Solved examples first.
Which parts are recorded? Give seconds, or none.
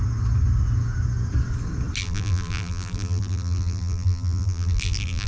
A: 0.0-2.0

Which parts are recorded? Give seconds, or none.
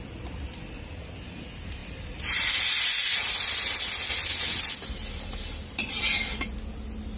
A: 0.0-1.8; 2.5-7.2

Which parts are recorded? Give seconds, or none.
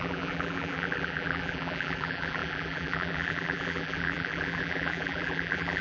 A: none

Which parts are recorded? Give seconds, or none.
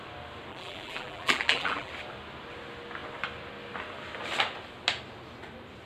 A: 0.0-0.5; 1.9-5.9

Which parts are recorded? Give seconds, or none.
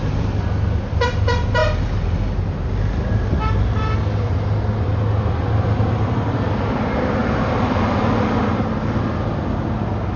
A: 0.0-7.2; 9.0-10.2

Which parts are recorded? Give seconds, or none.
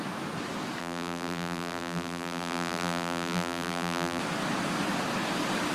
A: 0.0-0.8; 4.2-5.7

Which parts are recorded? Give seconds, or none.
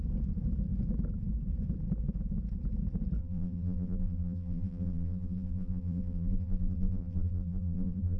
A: 0.0-3.2